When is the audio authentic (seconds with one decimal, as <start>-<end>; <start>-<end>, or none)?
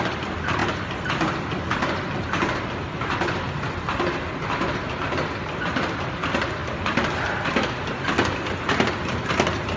0.0-0.6; 2.4-9.8